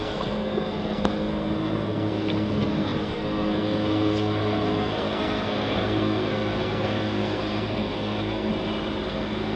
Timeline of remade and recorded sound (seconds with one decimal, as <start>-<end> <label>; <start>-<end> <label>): 0.0-8.5 remade; 8.5-9.1 recorded; 9.1-9.6 remade